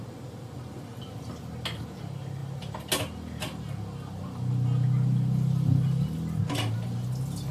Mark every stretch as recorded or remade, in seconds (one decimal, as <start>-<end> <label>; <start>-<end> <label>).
0.0-7.5 recorded